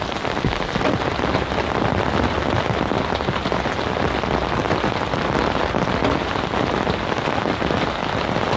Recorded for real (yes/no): yes